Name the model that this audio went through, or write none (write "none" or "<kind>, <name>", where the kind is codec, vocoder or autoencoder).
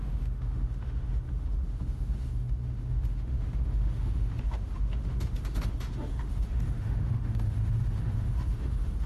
autoencoder, DAC-VAE